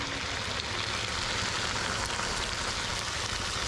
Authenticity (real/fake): real